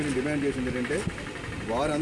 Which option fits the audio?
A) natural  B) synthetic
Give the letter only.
A